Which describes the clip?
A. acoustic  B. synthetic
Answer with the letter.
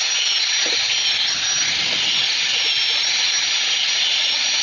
A